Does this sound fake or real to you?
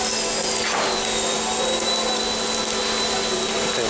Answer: real